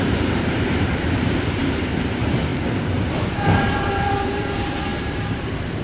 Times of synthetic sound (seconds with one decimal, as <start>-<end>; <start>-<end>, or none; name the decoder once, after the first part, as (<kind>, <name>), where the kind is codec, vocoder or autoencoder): 0.0-5.8 (vocoder, BigVGAN v2)

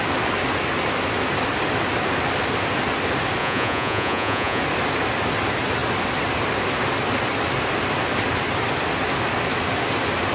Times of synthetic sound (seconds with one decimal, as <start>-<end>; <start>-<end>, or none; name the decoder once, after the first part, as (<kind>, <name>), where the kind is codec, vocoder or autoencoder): 3.4-4.6 (vocoder, Vocos)

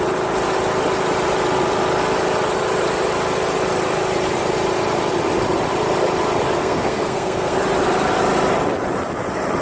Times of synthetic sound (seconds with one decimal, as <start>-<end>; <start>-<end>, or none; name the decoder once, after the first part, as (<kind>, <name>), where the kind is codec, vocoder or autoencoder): 6.6-7.6 (codec, SNAC)